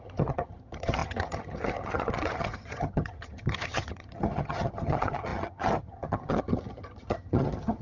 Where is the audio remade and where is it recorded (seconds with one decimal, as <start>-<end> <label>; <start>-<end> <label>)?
0.0-7.8 remade